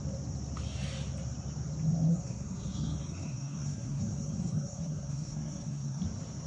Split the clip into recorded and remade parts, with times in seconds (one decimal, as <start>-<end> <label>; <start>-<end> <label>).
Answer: 0.0-2.1 recorded; 2.1-6.0 remade; 6.0-6.5 recorded